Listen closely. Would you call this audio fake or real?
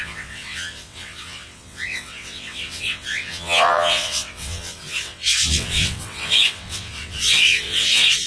fake